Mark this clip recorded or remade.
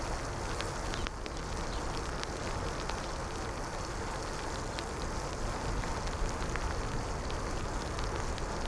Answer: recorded